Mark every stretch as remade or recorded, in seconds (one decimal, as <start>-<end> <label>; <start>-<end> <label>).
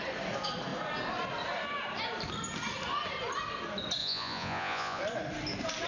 0.0-4.0 recorded; 4.0-5.0 remade; 5.0-5.9 recorded